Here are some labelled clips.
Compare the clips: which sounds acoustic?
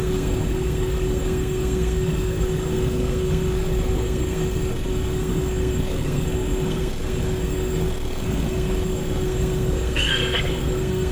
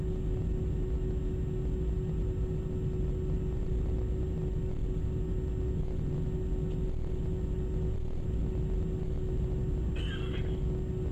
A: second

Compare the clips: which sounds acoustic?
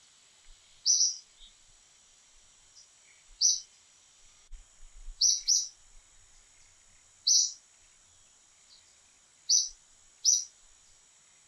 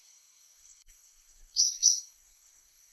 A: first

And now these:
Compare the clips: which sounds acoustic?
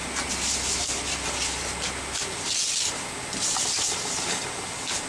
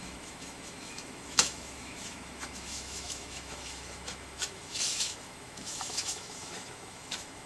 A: first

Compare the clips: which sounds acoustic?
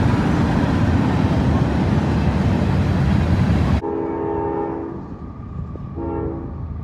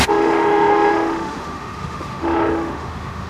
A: first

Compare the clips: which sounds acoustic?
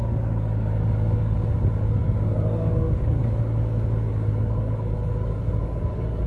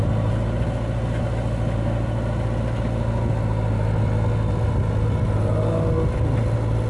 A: second